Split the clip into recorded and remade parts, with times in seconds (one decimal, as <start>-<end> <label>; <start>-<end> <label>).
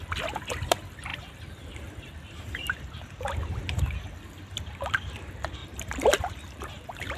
0.0-5.6 recorded; 5.6-7.2 remade